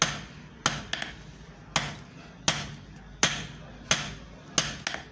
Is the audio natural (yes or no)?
yes